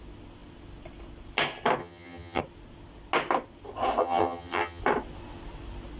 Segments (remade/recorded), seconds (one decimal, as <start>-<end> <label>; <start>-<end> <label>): 0.0-1.8 recorded; 1.8-2.4 remade; 2.4-4.0 recorded; 4.0-4.8 remade; 4.8-6.0 recorded